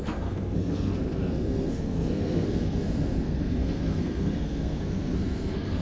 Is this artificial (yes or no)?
yes